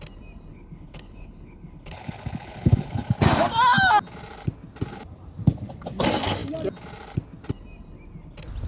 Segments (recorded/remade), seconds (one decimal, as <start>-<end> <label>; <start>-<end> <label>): 0.0-0.5 recorded; 0.5-3.1 remade; 3.1-8.7 recorded